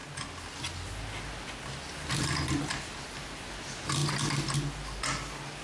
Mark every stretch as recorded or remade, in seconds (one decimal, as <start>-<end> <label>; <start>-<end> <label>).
0.0-5.6 recorded